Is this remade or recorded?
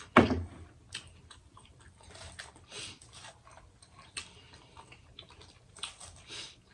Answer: recorded